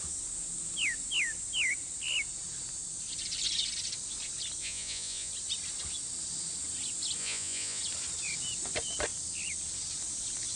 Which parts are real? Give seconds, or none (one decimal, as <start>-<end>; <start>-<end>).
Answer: 0.0-4.6; 5.3-7.2; 7.8-10.6